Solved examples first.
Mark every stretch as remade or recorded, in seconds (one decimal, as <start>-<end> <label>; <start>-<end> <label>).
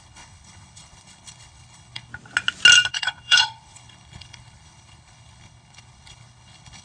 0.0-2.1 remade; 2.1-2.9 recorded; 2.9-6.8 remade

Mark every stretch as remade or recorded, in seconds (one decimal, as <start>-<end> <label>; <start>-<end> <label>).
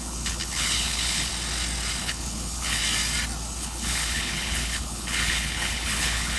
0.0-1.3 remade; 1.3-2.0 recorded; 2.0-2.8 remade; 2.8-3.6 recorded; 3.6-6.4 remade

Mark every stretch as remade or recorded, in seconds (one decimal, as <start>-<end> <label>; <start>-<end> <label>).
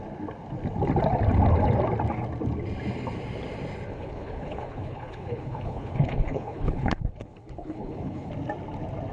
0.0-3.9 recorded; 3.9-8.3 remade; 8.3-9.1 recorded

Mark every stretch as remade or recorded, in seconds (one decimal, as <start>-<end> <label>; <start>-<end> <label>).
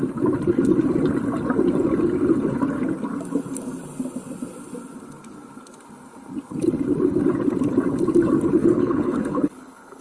0.0-8.6 recorded; 8.6-10.0 remade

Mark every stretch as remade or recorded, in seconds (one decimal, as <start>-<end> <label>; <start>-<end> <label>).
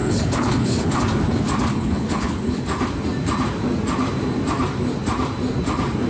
0.0-1.0 remade; 1.0-1.7 recorded; 1.7-2.6 remade; 2.6-6.1 recorded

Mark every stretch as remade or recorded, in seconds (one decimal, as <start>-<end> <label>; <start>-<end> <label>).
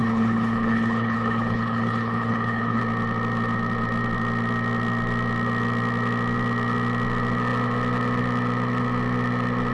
0.0-2.8 remade; 2.8-9.7 recorded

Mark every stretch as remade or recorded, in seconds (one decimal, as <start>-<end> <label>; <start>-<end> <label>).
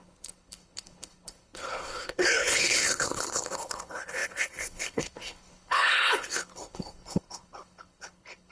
0.0-8.5 remade